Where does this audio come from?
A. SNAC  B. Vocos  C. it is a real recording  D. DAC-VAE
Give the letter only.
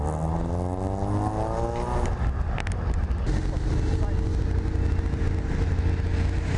C